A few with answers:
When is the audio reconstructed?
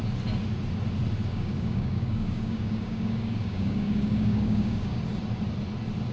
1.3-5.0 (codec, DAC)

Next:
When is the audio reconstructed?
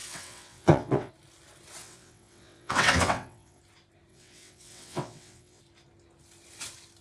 0.0-1.1 (vocoder, WaveNeXt); 1.8-3.6; 4.1-5.6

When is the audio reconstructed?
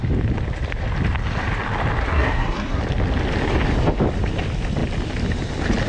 2.0-2.8 (codec, SNAC)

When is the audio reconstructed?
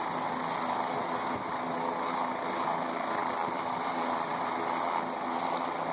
none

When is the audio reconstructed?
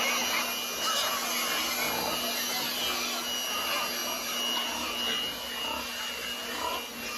none